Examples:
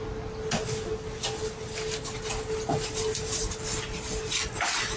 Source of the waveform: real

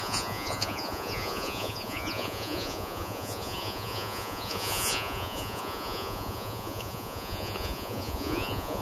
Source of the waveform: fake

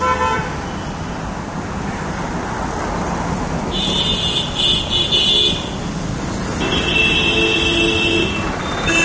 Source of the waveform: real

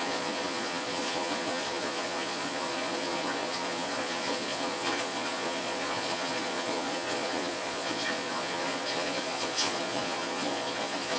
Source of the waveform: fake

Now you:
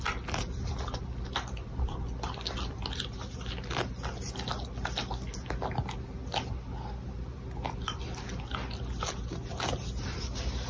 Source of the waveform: real